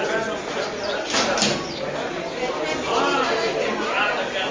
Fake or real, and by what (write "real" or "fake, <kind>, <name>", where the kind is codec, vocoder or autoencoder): real